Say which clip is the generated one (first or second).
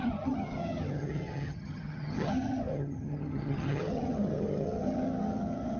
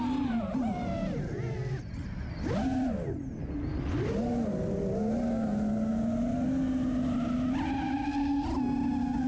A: first